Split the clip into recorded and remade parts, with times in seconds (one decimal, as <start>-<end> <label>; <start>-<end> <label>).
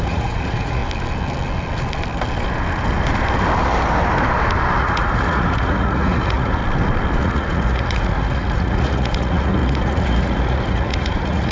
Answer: 0.0-0.8 remade; 0.8-4.8 recorded; 4.8-6.6 remade; 6.6-7.2 recorded; 7.2-11.5 remade